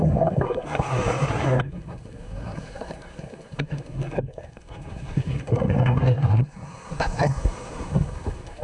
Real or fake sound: fake